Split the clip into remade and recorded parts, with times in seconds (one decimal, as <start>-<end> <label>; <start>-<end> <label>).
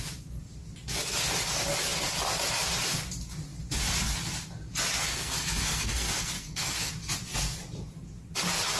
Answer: 0.0-5.0 recorded; 5.0-6.9 remade; 6.9-8.8 recorded